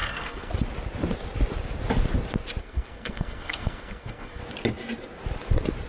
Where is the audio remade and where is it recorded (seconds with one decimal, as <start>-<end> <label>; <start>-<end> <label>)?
0.0-0.5 remade; 0.5-2.6 recorded; 2.6-4.4 remade; 4.4-5.9 recorded